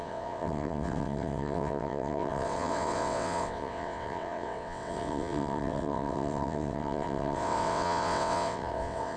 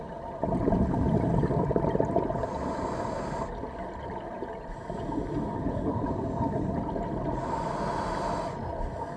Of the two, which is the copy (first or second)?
first